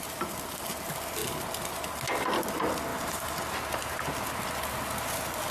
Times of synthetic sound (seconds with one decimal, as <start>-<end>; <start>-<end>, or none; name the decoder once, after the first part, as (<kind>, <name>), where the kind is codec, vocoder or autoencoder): 2.9-3.4 (vocoder, BigVGAN v2)